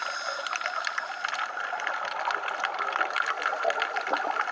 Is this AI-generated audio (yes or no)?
no